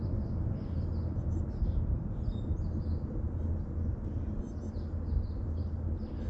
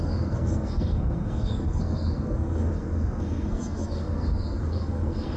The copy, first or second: second